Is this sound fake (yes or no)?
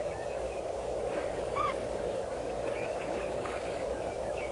yes